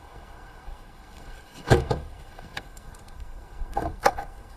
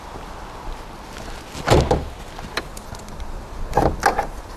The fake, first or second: first